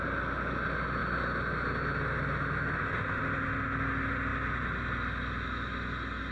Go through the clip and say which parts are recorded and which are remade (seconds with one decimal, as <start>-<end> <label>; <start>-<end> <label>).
0.0-6.3 recorded